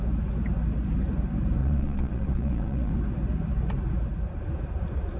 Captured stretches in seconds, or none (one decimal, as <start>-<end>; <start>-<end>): 0.0-1.6; 2.9-5.2